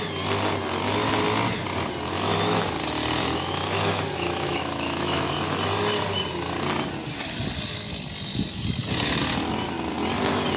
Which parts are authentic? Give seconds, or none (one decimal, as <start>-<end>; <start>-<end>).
0.0-2.1; 2.7-3.2; 5.3-10.6